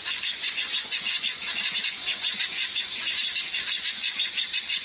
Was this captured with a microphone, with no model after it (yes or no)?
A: no